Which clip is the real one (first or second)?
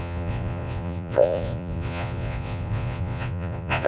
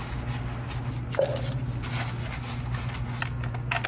second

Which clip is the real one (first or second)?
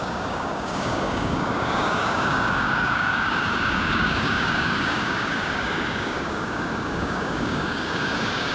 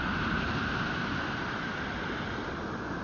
second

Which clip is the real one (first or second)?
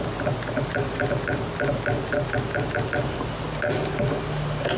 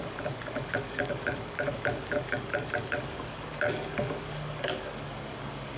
first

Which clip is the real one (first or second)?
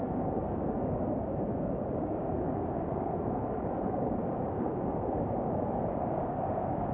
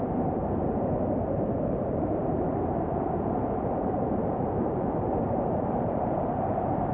second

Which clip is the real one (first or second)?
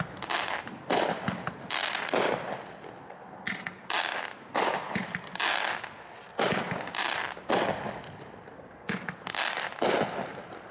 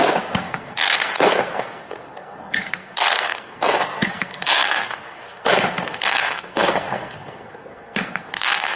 first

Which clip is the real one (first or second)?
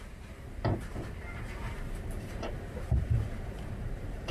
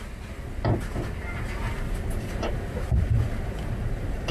second